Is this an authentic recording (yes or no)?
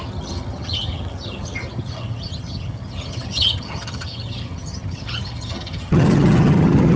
no